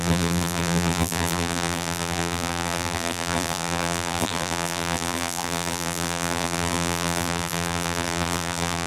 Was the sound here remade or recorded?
remade